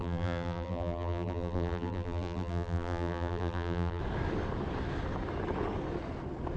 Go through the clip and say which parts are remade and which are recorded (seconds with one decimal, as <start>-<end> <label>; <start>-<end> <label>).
0.0-4.0 remade; 4.0-6.6 recorded